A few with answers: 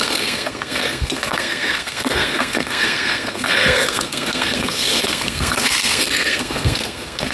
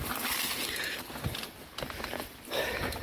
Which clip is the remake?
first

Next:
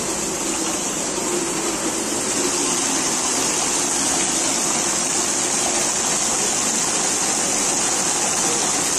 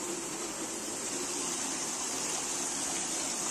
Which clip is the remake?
second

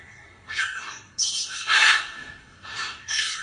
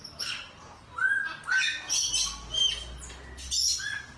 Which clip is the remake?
first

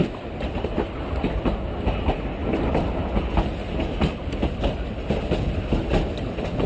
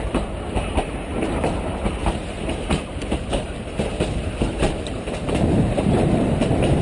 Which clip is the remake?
second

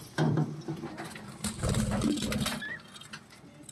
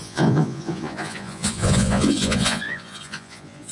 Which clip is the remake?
second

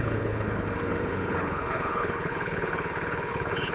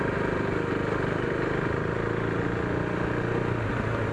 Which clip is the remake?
first